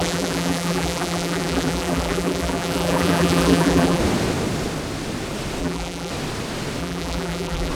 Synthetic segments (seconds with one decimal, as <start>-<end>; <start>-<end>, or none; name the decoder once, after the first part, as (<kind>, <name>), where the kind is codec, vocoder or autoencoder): 0.0-4.0 (vocoder, BigVGAN v2); 5.6-6.1; 6.8-7.7